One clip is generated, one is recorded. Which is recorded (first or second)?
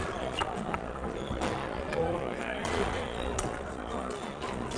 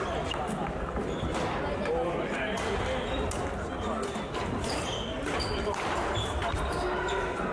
second